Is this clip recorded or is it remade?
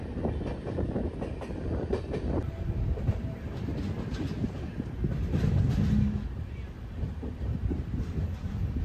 recorded